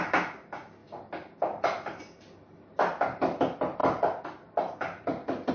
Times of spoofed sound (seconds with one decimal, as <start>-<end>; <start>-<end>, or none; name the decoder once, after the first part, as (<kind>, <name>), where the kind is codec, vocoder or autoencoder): none